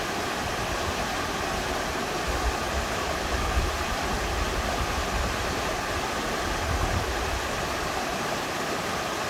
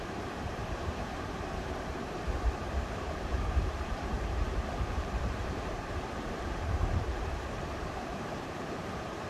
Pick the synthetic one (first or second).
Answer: second